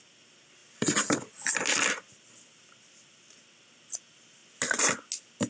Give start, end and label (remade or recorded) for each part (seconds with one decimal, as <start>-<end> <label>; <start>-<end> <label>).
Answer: 0.0-5.5 recorded